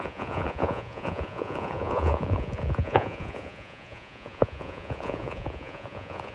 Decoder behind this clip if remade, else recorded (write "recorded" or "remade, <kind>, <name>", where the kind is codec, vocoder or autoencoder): remade, vocoder, Vocos